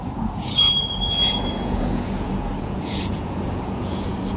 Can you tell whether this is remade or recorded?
remade